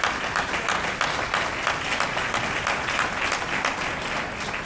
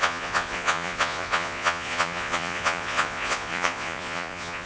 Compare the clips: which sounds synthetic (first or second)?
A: second